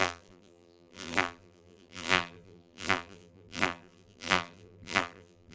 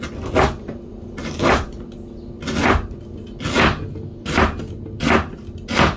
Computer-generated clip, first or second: first